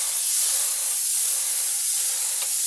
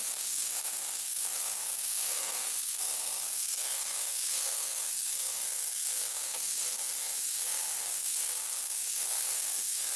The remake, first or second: second